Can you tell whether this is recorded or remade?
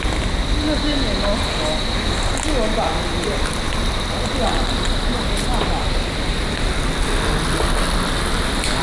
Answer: recorded